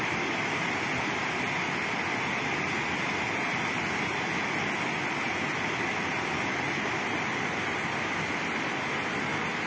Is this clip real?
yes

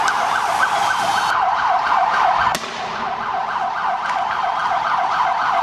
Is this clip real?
yes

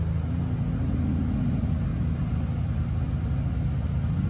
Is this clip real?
yes